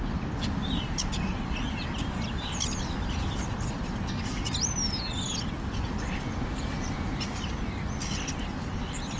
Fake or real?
real